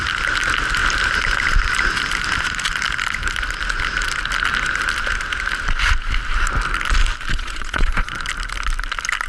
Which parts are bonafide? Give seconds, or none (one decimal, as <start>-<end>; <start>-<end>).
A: 0.0-7.3; 8.1-9.3